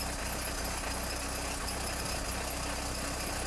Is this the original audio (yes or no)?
yes